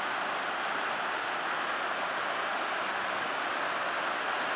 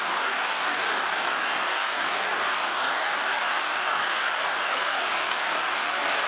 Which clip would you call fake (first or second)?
second